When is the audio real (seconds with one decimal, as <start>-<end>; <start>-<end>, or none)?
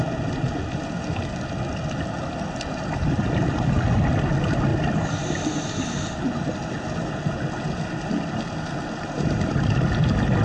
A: 0.0-10.4